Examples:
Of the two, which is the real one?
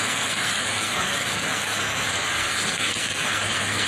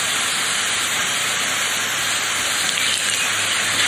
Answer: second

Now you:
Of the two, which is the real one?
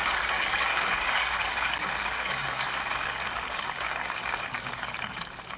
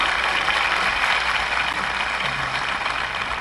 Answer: second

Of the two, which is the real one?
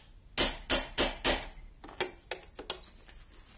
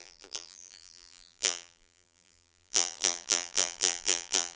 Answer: first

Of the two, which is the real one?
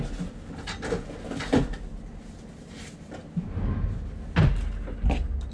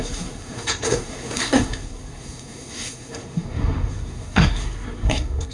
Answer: first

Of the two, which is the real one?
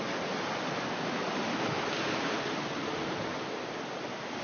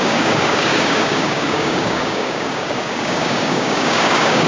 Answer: first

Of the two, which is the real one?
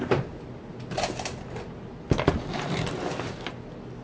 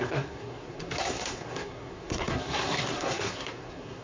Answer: first